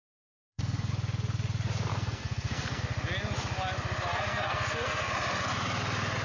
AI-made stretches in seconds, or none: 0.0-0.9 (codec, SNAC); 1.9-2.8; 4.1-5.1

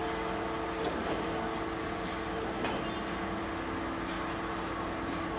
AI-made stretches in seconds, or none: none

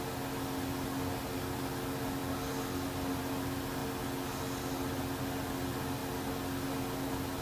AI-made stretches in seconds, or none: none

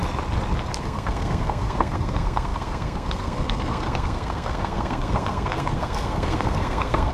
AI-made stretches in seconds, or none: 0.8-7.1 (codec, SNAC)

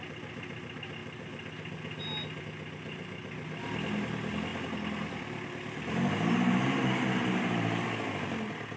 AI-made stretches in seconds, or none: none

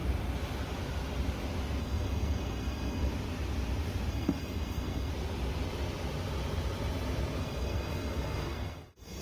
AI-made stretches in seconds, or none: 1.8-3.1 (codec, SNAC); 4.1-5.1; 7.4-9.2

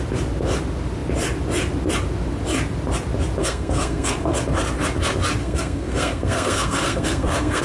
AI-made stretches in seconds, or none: 3.4-4.4 (codec, SNAC); 5.4-7.6

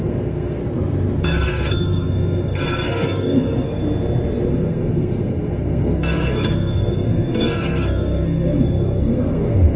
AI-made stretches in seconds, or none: 0.0-0.6 (codec, SNAC); 1.2-3.8; 4.5-9.8